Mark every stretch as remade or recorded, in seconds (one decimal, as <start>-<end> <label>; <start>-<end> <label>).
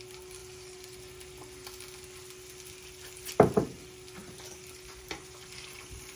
0.0-4.2 recorded; 4.2-6.2 remade